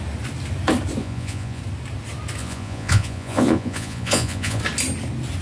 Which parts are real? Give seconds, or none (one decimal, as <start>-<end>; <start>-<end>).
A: 0.0-1.0; 1.6-2.4; 4.6-5.4